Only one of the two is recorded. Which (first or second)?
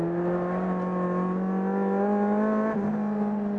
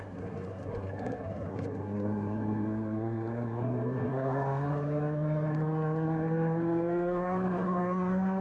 first